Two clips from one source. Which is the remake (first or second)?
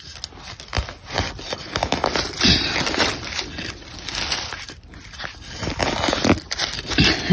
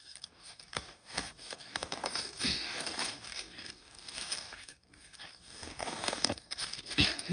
second